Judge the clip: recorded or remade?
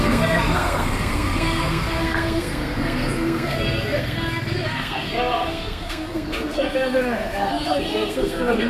remade